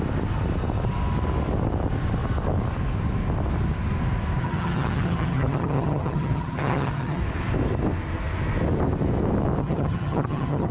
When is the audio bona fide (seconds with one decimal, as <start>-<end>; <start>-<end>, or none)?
0.0-4.4; 7.2-9.6